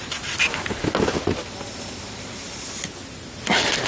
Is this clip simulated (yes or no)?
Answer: no